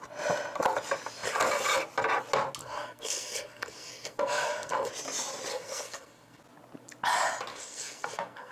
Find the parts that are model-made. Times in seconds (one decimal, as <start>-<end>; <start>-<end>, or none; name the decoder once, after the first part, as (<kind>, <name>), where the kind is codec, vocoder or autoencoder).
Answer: 2.6-4.9 (codec, SNAC); 5.5-6.4; 7.5-8.5

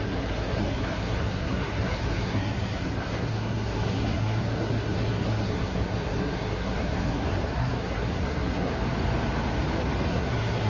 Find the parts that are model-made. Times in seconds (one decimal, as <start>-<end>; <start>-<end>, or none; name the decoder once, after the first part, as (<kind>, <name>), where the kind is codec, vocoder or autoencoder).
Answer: 0.0-8.7 (codec, SNAC); 10.1-10.7